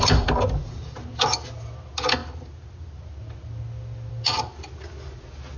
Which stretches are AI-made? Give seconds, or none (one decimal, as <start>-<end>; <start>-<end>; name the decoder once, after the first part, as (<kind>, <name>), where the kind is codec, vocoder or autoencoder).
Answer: none